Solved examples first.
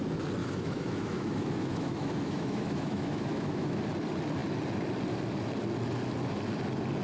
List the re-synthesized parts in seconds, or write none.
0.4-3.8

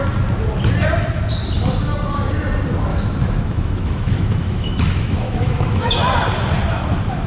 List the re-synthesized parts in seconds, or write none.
2.9-6.0

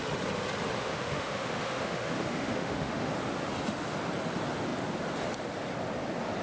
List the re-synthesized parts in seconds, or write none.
0.8-3.1

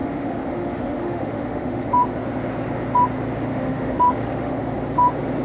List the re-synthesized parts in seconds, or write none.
0.0-1.9; 3.5-4.6

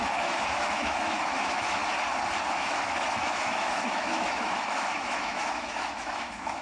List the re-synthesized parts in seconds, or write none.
0.0-1.8; 2.5-6.6